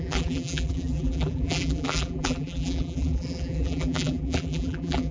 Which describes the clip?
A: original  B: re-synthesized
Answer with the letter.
B